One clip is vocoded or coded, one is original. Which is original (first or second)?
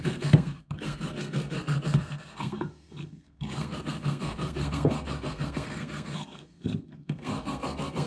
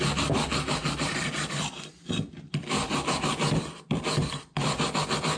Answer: second